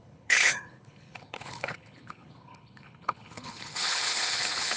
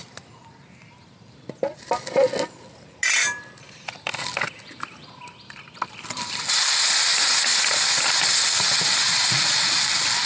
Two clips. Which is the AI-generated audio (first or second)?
first